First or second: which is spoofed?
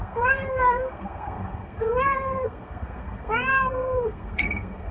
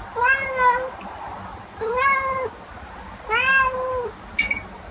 first